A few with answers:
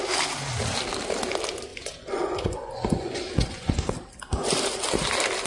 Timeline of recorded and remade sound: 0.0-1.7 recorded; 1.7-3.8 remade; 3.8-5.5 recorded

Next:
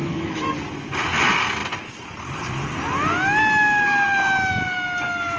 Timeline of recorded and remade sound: 0.0-0.5 remade; 0.5-5.4 recorded

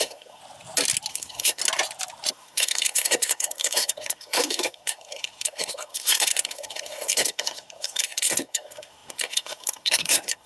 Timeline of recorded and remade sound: 0.0-0.4 remade; 0.4-1.1 recorded; 1.1-1.6 remade; 1.6-2.3 recorded; 2.3-10.5 remade

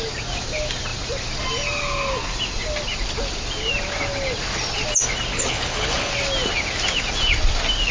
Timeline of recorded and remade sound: 0.0-5.3 recorded; 5.3-6.1 remade; 6.1-7.9 recorded

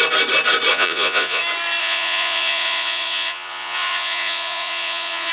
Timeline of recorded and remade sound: 0.0-0.7 recorded; 0.7-1.4 remade; 1.4-1.8 recorded; 1.8-5.3 remade

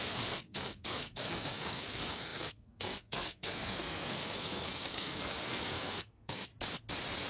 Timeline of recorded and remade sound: 0.0-6.5 remade; 6.5-7.3 recorded

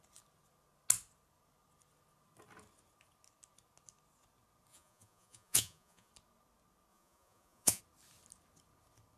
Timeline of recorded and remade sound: 0.0-4.7 recorded; 4.7-6.1 remade; 6.1-6.9 recorded; 6.9-7.8 remade; 7.8-9.2 recorded

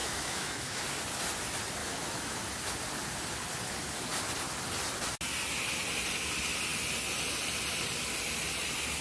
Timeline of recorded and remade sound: 0.0-0.8 remade; 0.8-1.8 recorded; 1.8-2.4 remade; 2.4-9.0 recorded